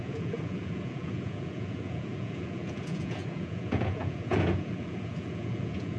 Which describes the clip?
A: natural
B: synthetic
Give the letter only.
B